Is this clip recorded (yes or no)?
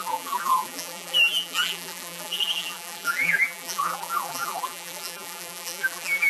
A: no